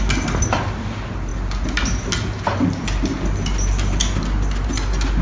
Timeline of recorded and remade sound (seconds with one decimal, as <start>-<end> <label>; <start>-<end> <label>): 0.0-5.2 recorded